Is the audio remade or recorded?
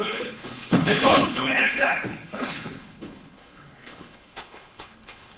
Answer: remade